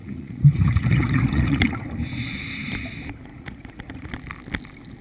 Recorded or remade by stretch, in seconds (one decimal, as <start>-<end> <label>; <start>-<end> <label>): 0.0-1.7 remade; 1.7-3.3 recorded; 3.3-4.1 remade; 4.1-5.0 recorded